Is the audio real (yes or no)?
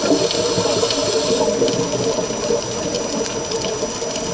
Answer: yes